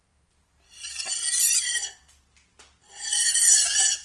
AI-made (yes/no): no